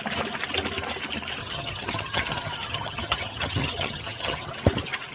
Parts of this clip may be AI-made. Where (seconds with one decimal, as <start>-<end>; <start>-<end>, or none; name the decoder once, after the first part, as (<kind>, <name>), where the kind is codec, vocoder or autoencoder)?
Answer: 1.4-4.5 (vocoder, HiFi-GAN)